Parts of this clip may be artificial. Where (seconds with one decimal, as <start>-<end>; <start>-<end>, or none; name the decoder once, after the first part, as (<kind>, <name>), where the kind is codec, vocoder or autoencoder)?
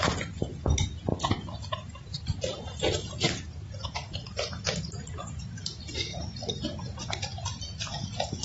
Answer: none